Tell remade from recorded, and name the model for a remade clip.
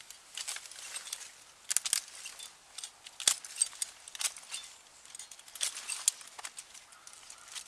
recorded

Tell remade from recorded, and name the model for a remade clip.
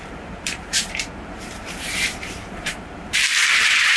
remade, vocoder, BigVGAN v2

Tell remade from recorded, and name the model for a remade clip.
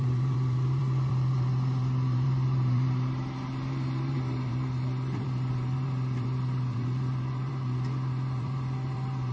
remade, vocoder, BigVGAN v2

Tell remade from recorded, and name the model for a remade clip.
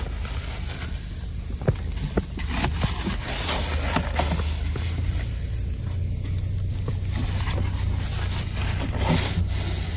recorded